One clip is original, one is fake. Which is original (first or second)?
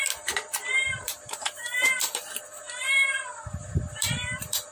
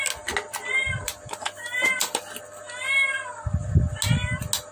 second